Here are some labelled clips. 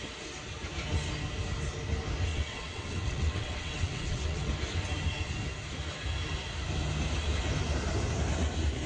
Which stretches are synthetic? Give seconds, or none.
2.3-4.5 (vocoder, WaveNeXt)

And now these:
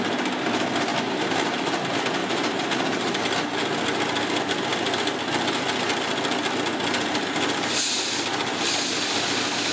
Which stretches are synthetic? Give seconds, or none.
0.9-1.8 (vocoder, BigVGAN v2); 2.2-3.2

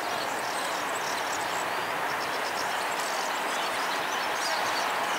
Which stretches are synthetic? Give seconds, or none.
none

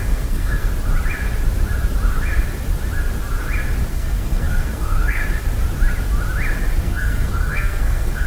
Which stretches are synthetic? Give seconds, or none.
0.0-0.7 (codec, SNAC); 3.9-5.2; 6.8-8.3

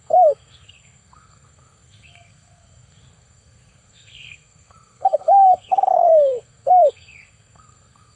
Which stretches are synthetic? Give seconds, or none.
0.0-8.2 (codec, SNAC)